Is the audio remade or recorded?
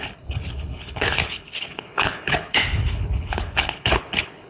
remade